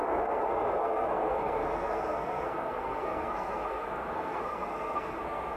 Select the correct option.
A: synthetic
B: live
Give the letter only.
A